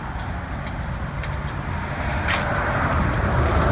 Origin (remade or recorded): recorded